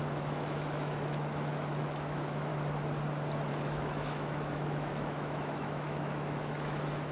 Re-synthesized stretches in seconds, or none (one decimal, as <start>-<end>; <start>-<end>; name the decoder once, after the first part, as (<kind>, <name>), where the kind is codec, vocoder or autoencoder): 0.0-2.5 (autoencoder, DAC-VAE); 3.5-7.1